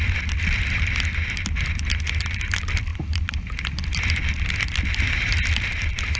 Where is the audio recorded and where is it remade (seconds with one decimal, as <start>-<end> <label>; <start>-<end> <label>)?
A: 0.0-6.2 remade

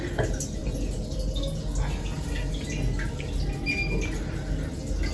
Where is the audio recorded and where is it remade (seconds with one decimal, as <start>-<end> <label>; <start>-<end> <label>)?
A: 0.0-5.1 recorded

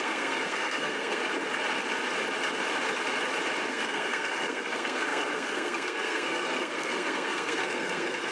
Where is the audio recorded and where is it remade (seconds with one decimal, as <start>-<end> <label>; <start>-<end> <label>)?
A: 0.0-1.2 remade; 1.2-3.7 recorded; 3.7-8.3 remade